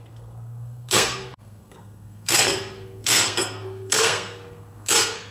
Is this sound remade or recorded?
remade